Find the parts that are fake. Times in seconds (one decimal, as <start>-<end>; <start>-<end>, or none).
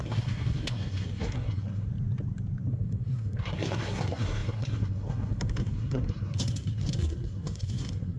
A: 0.0-1.9; 2.7-8.2